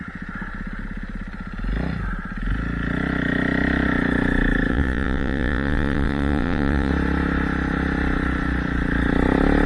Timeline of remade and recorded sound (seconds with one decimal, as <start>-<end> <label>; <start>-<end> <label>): 0.0-4.7 recorded; 4.7-6.9 remade; 6.9-9.7 recorded